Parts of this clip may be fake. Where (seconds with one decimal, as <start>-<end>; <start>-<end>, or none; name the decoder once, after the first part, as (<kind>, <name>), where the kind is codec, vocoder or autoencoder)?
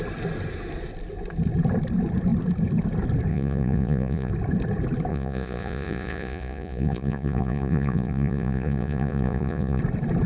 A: 3.3-4.3 (vocoder, Vocos); 5.1-9.8